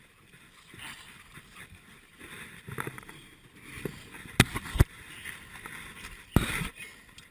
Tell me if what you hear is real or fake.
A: real